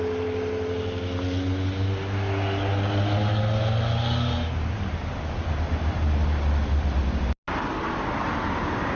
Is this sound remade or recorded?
recorded